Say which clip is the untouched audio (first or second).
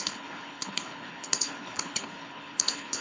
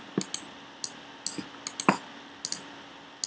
second